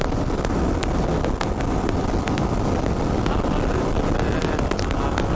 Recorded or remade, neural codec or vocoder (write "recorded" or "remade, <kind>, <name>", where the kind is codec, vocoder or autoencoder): recorded